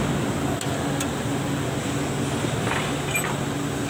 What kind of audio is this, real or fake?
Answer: real